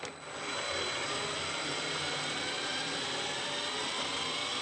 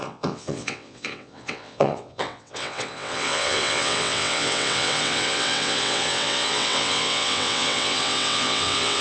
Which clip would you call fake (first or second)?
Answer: second